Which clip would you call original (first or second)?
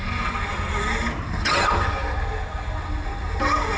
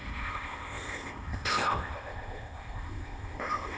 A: first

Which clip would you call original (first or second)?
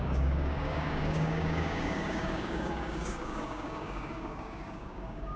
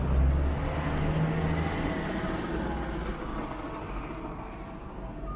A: second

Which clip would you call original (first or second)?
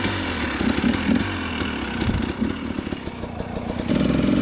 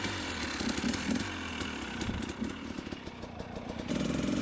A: first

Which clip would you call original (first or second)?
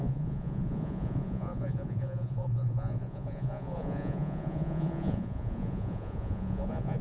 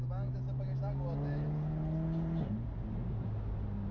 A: second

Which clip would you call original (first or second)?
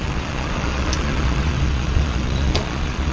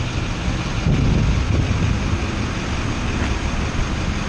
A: second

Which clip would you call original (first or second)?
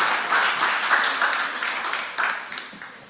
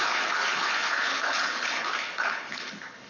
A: first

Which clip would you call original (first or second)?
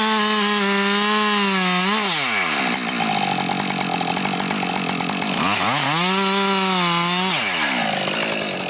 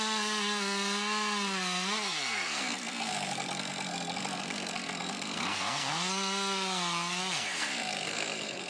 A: first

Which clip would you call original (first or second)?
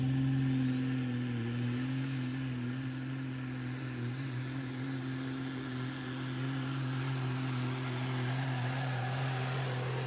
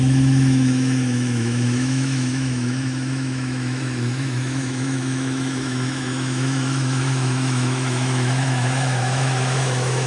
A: first